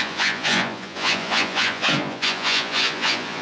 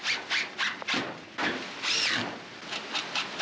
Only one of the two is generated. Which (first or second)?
first